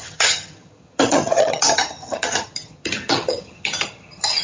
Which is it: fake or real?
fake